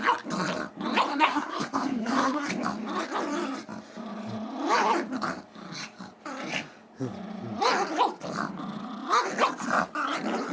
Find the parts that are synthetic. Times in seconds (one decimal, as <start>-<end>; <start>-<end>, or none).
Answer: 1.1-2.5